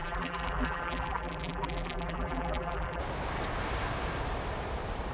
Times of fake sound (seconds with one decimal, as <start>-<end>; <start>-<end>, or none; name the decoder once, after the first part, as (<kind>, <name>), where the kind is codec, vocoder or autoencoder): 0.0-3.0 (vocoder, BigVGAN v2)